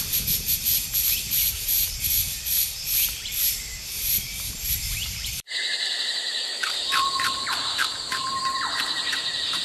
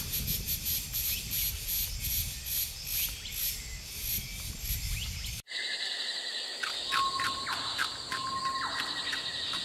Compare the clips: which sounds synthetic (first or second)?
first